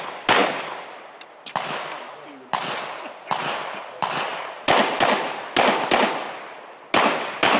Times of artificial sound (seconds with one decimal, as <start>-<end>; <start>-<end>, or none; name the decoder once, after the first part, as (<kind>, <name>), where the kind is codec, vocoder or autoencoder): none